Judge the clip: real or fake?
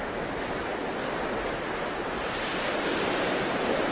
real